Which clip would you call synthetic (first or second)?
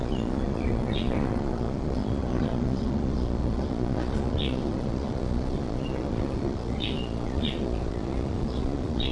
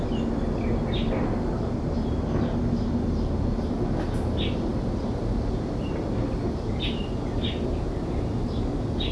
first